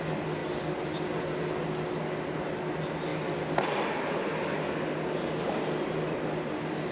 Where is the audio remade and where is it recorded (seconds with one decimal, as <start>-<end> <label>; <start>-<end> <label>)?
0.0-6.9 recorded

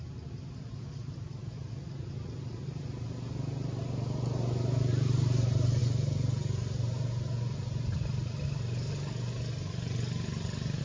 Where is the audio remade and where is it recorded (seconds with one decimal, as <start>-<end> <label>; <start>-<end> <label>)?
0.0-10.8 recorded

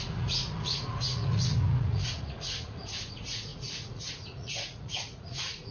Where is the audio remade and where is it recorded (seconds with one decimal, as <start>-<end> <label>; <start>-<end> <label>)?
0.0-5.7 remade